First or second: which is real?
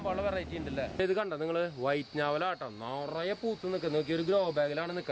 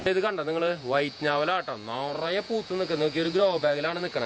first